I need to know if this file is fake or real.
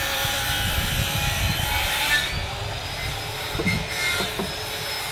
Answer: fake